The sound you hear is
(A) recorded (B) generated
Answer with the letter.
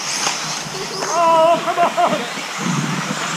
A